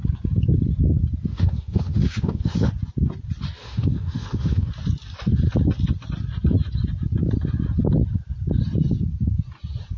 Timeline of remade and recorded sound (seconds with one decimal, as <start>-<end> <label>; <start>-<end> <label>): 0.0-1.3 recorded; 1.3-2.7 remade; 2.7-3.6 recorded; 3.6-4.7 remade; 4.7-10.0 recorded